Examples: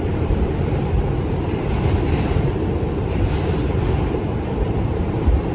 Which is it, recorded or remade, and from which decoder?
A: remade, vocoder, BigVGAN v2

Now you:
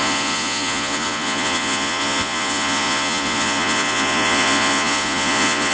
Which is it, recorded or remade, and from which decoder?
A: remade, vocoder, Vocos